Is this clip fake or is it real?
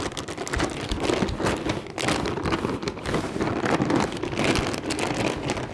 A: real